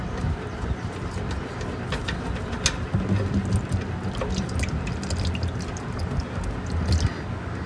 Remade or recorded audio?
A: recorded